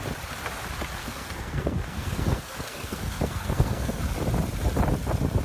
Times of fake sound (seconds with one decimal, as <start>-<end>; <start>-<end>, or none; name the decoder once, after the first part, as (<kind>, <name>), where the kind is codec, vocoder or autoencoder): 1.0-4.0 (codec, SNAC)